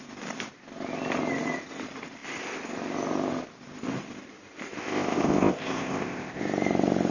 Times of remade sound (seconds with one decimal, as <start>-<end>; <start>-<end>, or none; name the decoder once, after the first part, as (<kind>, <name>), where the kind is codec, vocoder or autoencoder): 4.8-6.4 (codec, ZipCodec)